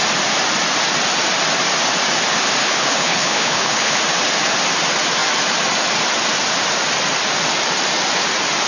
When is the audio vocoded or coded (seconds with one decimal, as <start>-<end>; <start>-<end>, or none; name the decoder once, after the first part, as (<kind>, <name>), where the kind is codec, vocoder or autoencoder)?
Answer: 2.6-4.0 (codec, HILCodec)